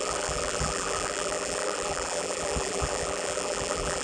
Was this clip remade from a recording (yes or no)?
yes